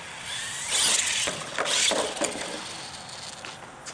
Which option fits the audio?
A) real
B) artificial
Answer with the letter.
A